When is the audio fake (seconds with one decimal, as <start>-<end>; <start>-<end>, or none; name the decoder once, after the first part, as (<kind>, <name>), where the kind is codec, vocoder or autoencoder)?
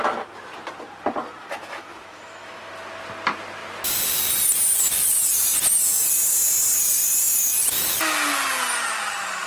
1.4-2.7 (autoencoder, DAC-VAE)